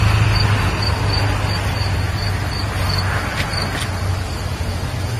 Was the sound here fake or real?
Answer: real